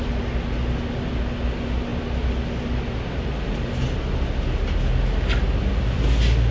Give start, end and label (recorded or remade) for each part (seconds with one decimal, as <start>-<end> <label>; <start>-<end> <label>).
0.0-6.5 recorded